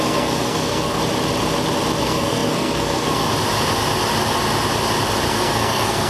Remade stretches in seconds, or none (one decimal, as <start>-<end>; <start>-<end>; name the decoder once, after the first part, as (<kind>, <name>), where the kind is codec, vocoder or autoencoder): 0.0-1.0 (codec, SNAC); 2.0-3.3; 5.3-6.1